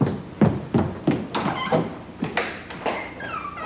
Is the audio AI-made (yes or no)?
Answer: no